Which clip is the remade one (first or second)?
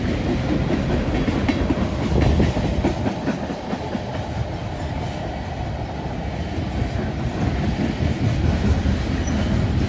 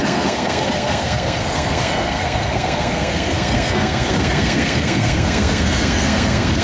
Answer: second